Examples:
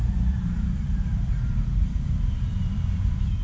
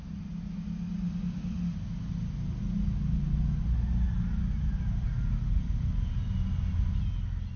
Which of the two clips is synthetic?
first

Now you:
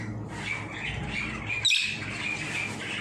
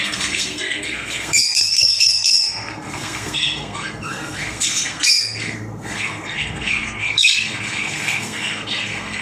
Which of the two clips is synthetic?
second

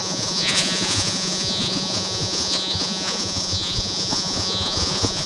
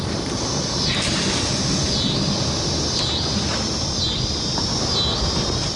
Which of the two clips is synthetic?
first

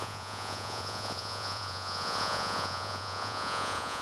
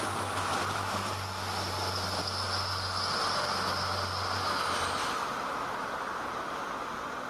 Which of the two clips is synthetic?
first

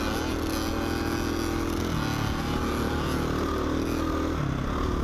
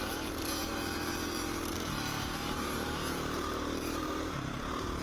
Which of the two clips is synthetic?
second